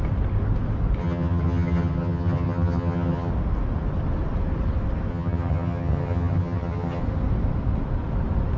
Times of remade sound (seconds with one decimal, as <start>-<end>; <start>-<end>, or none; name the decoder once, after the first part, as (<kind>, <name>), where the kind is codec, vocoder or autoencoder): 1.0-3.3 (vocoder, HiFi-GAN); 5.1-7.0